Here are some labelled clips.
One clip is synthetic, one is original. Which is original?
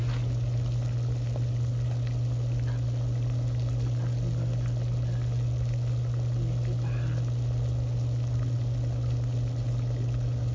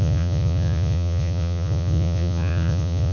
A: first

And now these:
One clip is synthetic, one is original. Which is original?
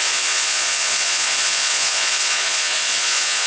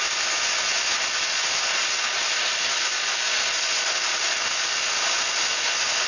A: second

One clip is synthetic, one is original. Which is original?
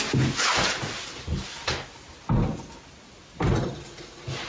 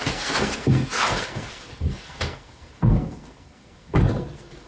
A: first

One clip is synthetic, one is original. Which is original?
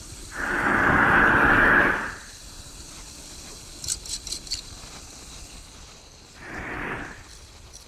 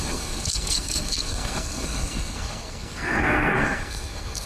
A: first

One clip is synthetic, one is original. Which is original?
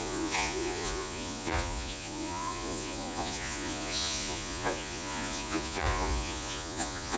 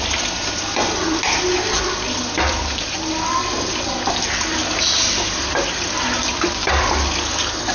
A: second